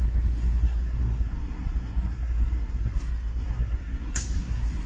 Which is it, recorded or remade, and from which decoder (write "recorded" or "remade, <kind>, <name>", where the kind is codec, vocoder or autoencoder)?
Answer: remade, codec, SNAC